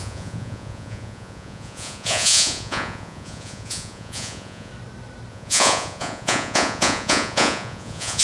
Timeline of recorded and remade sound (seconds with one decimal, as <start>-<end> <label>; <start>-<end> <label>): 0.0-4.7 remade; 4.7-5.3 recorded; 5.3-8.2 remade